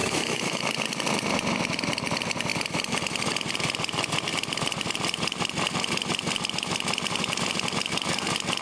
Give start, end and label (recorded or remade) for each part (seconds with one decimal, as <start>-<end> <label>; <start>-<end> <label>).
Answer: 0.0-0.6 remade; 0.6-8.6 recorded